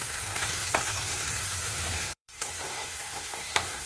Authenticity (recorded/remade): remade